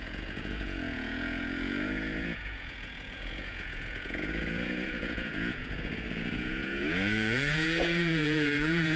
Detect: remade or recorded remade